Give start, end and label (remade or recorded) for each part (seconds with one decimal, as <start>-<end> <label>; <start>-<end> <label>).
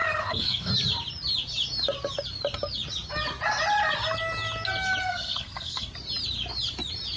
0.0-0.7 remade; 0.7-5.0 recorded; 5.0-5.9 remade; 5.9-7.2 recorded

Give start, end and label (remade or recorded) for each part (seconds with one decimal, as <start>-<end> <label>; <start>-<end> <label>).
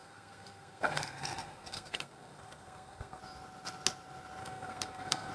0.0-3.2 remade; 3.2-4.4 recorded; 4.4-5.3 remade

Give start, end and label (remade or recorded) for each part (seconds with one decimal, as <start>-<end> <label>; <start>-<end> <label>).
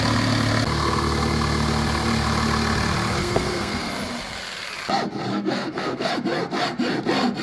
0.0-3.2 recorded; 3.2-3.9 remade; 3.9-5.3 recorded; 5.3-6.1 remade; 6.1-7.4 recorded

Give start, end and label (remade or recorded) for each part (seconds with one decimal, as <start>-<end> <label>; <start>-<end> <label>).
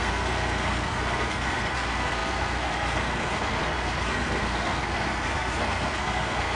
0.0-6.6 remade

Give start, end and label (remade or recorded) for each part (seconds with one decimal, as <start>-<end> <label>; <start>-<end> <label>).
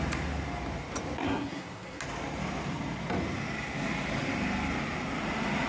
0.0-1.2 recorded; 1.2-2.0 remade; 2.0-5.7 recorded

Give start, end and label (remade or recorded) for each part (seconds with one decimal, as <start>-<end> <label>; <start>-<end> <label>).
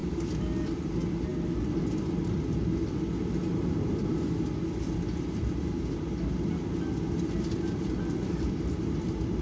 0.0-9.4 recorded